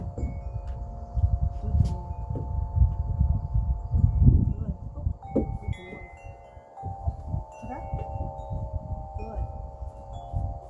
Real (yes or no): yes